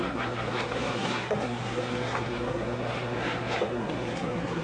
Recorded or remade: remade